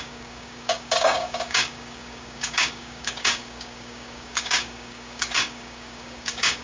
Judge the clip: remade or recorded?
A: remade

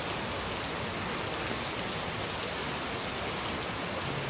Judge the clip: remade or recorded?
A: recorded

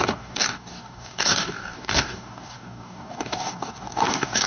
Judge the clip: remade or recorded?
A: remade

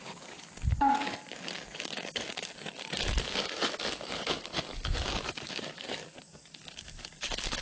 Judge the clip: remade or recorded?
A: remade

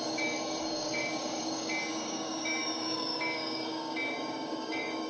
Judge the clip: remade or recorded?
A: remade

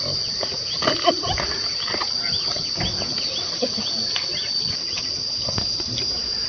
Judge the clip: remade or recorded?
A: recorded